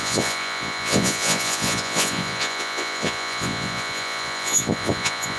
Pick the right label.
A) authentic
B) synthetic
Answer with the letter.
B